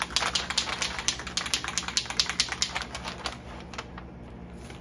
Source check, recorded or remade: recorded